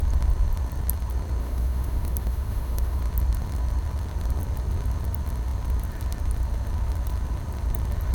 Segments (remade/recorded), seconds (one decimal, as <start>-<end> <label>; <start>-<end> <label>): 0.0-1.4 recorded; 1.4-3.0 remade; 3.0-8.1 recorded